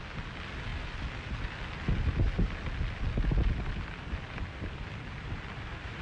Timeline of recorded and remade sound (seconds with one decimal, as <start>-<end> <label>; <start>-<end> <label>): 0.0-0.7 recorded; 0.7-1.6 remade; 1.6-2.1 recorded; 2.1-6.0 remade